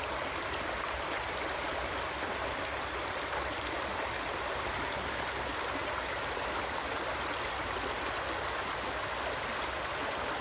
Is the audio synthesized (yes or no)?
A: no